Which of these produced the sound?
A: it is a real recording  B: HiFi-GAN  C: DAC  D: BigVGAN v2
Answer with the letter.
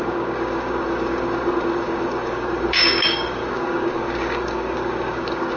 C